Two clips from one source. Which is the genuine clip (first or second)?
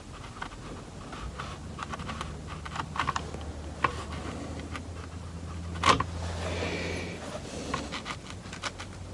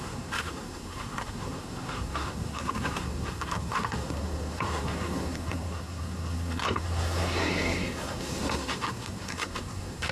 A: first